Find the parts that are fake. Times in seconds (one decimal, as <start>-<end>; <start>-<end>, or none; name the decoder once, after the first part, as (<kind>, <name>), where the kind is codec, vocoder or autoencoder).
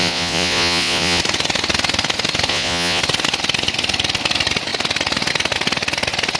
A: 0.0-1.2 (vocoder, Vocos); 2.5-3.0